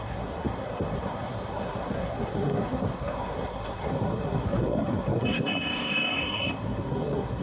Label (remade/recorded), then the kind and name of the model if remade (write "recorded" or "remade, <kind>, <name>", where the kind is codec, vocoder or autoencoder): remade, codec, SNAC